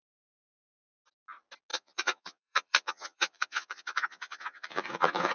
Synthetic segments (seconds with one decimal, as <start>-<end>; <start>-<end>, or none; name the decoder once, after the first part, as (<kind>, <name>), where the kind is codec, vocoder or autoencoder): 1.7-5.3 (vocoder, Vocos)